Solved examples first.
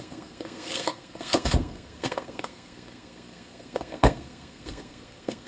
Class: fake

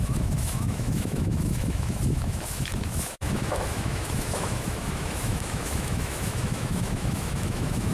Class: fake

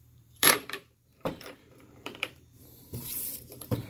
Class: fake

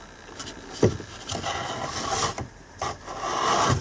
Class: real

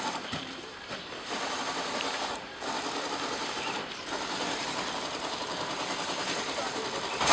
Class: fake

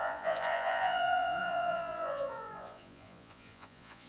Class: fake